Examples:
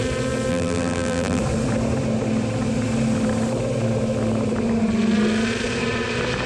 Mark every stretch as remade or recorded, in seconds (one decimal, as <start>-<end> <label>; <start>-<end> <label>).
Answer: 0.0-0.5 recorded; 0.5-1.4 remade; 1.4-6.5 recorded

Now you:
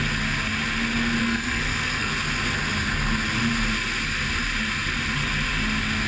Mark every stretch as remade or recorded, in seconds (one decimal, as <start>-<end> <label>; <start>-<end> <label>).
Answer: 0.0-1.2 recorded; 1.2-2.1 remade; 2.1-6.1 recorded

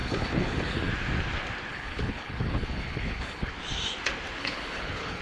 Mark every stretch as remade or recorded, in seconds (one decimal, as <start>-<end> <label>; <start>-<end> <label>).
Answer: 0.0-0.9 remade; 0.9-1.7 recorded; 1.7-3.5 remade; 3.5-4.4 recorded; 4.4-5.2 remade

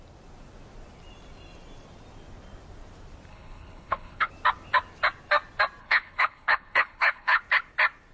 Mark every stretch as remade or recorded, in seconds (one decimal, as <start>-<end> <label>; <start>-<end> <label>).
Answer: 0.0-3.3 recorded; 3.3-4.3 remade; 4.3-5.8 recorded; 5.8-7.4 remade; 7.4-8.1 recorded

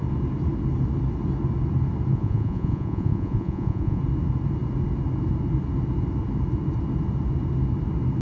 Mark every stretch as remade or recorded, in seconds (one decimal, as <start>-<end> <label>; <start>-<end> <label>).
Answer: 0.0-2.1 recorded; 2.1-4.0 remade; 4.0-8.2 recorded